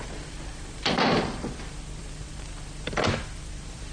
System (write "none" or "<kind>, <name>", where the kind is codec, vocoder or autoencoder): vocoder, BigVGAN v2